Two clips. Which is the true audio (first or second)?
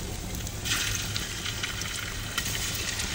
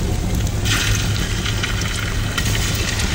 second